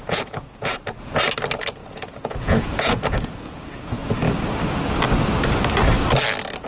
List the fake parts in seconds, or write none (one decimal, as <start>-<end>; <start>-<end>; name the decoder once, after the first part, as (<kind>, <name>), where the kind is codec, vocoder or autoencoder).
0.0-0.8 (vocoder, Vocos); 1.8-4.1